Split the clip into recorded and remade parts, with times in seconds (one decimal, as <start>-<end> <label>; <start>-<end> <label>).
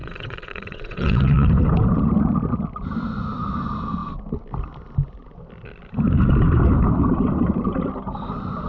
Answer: 0.0-1.5 remade; 1.5-8.7 recorded